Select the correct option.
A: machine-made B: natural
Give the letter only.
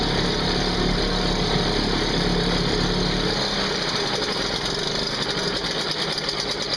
B